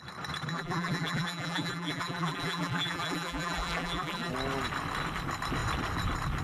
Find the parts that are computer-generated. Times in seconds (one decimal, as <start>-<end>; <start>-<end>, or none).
0.5-4.3